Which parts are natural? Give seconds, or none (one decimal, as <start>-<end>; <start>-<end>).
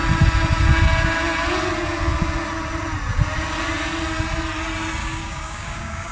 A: 0.0-5.0